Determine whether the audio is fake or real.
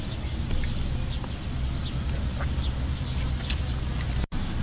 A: real